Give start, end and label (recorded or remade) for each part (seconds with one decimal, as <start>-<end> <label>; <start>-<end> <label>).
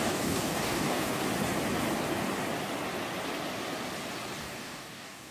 0.0-1.2 remade; 1.2-4.4 recorded; 4.4-5.3 remade